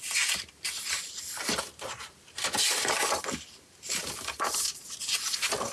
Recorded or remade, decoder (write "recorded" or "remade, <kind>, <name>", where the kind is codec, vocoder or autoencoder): recorded